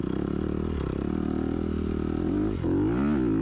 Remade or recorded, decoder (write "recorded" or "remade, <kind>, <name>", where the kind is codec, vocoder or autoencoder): recorded